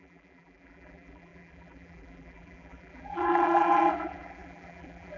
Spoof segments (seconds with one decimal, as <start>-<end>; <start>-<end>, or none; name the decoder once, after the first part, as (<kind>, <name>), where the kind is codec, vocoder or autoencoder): 0.0-5.2 (vocoder, BigVGAN v2)

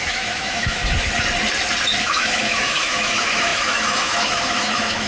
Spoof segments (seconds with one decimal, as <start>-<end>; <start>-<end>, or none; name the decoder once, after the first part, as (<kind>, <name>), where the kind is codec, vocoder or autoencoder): 0.0-0.8 (autoencoder, DAC-VAE); 2.0-5.1

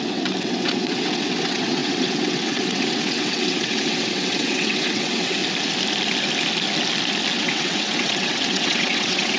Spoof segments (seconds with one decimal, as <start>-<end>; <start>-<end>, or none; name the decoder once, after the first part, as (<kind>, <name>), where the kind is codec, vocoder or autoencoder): 0.0-5.4 (vocoder, WaveNeXt); 7.3-9.4

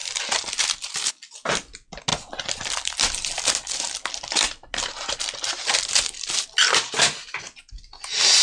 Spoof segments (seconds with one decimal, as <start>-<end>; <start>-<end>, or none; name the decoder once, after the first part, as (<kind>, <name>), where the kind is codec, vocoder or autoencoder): none

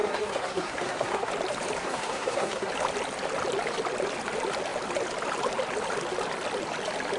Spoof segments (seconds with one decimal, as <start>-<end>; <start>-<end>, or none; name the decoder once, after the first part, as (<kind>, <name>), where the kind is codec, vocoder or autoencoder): 0.0-1.3 (codec, SNAC); 1.8-2.7

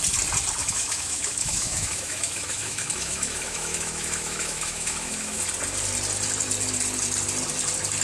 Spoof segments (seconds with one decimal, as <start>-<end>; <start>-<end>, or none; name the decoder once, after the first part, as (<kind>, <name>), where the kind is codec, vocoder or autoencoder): 0.6-5.4 (autoencoder, DAC-VAE)

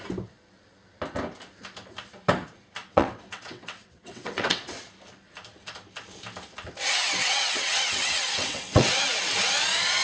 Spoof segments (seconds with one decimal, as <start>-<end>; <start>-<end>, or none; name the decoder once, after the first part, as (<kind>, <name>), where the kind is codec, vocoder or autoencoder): 2.8-4.6 (vocoder, WaveNeXt); 7.2-8.9